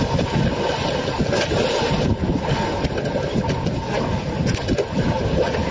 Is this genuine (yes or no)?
yes